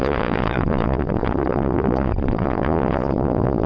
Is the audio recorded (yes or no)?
no